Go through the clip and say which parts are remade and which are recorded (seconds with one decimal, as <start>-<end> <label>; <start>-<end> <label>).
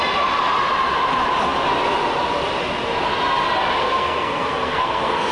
0.0-3.8 recorded; 3.8-5.3 remade